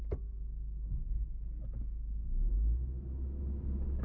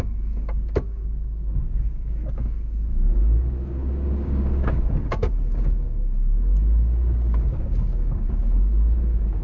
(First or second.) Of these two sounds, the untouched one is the first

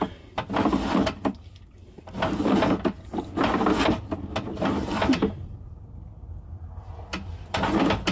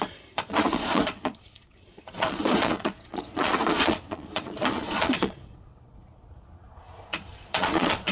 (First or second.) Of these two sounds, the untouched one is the first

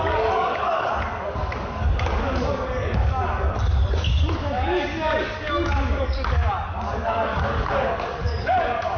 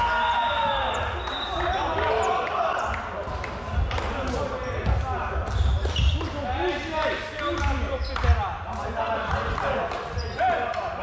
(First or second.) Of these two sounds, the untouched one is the second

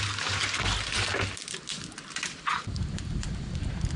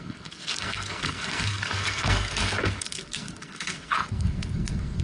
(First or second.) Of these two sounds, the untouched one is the first